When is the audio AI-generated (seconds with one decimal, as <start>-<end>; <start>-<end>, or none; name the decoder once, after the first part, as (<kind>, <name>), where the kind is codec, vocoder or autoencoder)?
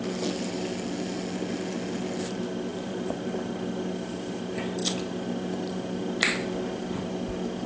2.7-3.3 (vocoder, BigVGAN v2)